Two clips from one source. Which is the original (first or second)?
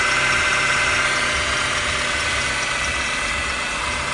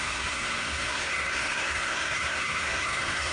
first